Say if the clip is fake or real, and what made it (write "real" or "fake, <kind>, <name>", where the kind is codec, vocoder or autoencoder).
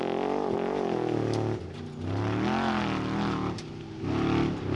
real